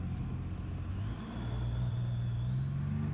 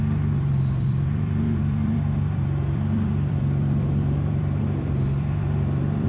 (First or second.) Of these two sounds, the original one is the first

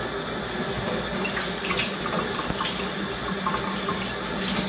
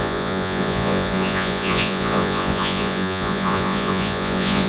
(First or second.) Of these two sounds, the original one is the first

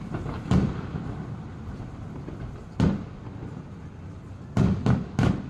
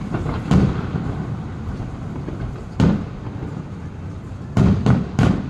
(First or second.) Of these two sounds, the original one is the first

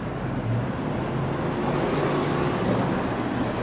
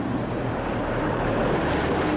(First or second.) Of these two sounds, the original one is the first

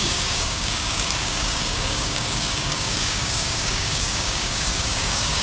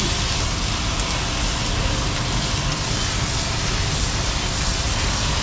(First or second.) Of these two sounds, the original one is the second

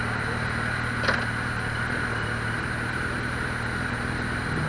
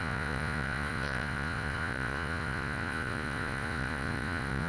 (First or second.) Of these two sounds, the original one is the first